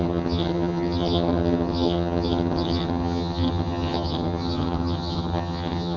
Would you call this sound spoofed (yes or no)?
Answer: yes